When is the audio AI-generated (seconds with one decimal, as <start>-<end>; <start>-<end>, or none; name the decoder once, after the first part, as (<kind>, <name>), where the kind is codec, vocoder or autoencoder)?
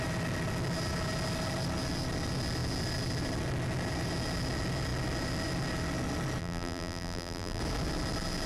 6.4-7.6 (vocoder, BigVGAN v2)